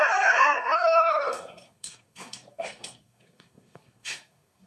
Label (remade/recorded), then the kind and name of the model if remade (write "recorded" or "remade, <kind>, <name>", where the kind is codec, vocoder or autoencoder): remade, codec, SNAC